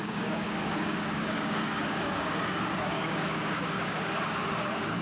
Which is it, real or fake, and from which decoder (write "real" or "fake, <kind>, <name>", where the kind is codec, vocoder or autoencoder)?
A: fake, codec, DAC